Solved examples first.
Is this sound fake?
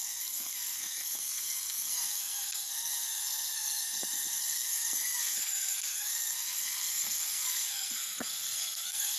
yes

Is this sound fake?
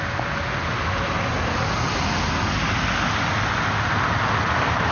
no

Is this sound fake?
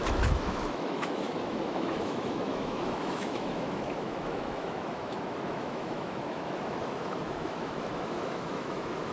yes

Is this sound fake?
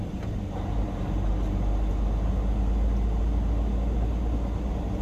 no